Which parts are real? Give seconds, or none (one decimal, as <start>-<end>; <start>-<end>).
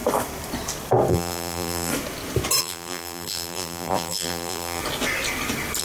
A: 0.0-1.1; 1.9-2.6; 4.8-5.8